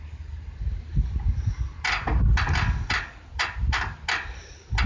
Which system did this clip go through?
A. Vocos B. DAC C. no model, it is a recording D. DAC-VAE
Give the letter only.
C